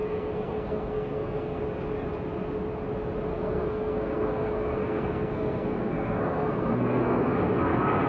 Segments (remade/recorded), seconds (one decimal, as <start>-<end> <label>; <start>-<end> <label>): 0.0-1.6 remade; 1.6-3.3 recorded; 3.3-8.1 remade